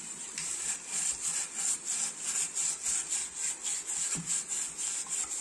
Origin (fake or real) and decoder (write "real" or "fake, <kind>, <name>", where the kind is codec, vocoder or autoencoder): real